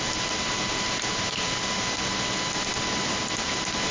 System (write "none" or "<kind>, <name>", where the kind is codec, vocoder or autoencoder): none